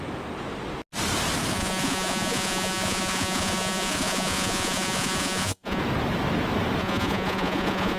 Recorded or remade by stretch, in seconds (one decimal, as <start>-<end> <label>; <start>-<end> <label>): 0.0-1.5 recorded; 1.5-5.8 remade; 5.8-6.8 recorded; 6.8-8.0 remade